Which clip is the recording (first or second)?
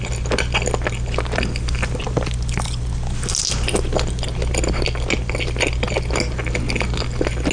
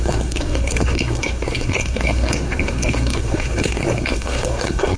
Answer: first